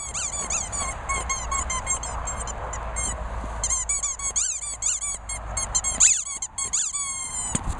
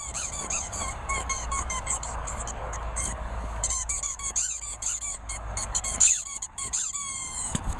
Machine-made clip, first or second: second